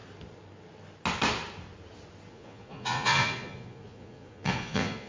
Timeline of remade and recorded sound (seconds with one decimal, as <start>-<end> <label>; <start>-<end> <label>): 0.0-2.3 recorded; 2.3-5.1 remade